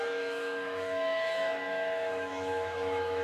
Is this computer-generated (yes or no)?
yes